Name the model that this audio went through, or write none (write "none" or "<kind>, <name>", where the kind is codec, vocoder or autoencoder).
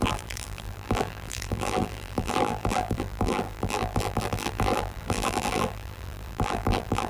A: vocoder, BigVGAN v2